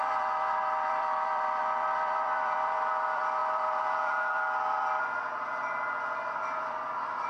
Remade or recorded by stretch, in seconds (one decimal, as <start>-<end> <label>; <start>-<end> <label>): 0.0-7.3 remade